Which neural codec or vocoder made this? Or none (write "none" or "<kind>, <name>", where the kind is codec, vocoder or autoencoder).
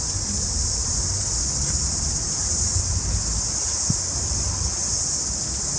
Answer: none